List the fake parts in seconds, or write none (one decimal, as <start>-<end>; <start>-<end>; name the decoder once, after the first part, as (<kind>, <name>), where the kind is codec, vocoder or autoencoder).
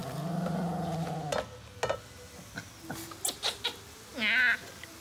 none